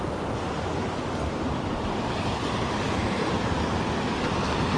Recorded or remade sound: recorded